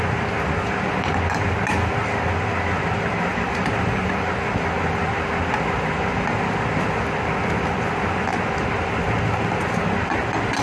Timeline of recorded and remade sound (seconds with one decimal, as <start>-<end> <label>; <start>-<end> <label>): 0.0-3.3 recorded; 3.3-4.3 remade; 4.3-10.6 recorded